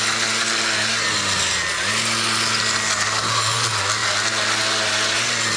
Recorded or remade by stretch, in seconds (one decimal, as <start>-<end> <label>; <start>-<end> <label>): 0.0-5.6 recorded